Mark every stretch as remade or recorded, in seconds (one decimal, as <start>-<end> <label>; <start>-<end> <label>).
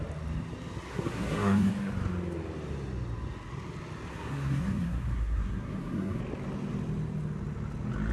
0.0-0.9 recorded; 0.9-1.7 remade; 1.7-4.1 recorded; 4.1-6.2 remade; 6.2-8.1 recorded